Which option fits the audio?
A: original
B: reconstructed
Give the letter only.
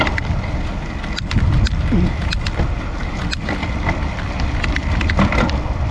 A